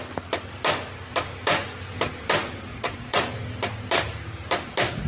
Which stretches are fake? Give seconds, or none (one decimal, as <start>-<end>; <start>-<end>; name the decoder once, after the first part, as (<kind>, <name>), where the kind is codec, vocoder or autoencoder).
2.7-3.3 (vocoder, Vocos)